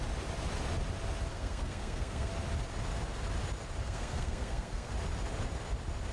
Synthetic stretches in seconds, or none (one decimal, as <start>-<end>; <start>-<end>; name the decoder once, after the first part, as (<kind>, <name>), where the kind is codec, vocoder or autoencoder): 1.3-2.3 (codec, SNAC); 3.8-4.9